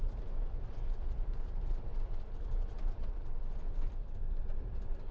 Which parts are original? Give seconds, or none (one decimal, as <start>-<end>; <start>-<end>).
4.4-5.1